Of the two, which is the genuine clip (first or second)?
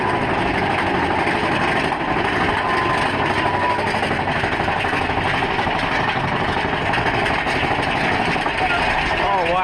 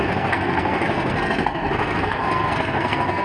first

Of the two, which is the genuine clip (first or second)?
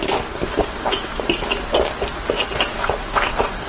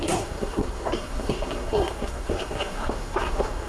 first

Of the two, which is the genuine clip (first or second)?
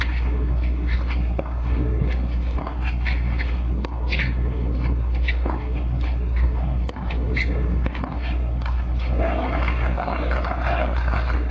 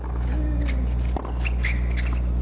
second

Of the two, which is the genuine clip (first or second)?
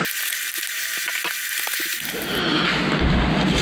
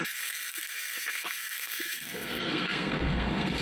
first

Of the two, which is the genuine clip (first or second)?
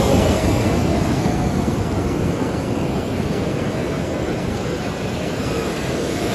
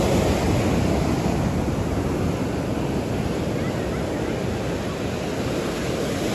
second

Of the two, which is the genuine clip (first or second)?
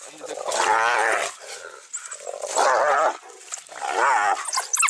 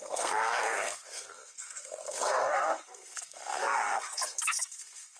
first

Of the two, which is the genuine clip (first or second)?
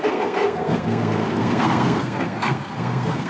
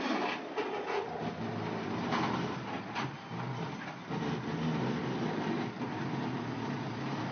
second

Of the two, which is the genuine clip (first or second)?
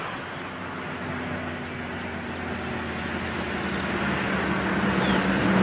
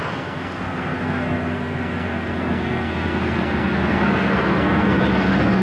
first